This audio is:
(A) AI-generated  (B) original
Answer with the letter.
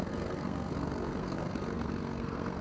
A